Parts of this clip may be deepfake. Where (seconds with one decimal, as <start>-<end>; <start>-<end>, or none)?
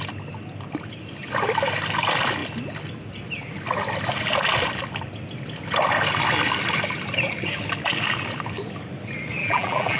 9.4-10.0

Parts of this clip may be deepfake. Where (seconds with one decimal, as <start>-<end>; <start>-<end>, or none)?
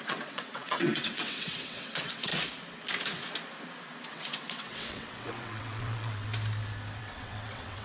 0.0-2.3; 4.1-6.3; 7.0-7.8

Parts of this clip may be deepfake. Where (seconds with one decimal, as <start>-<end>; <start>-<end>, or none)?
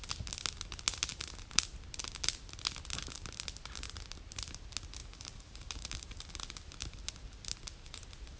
5.0-6.3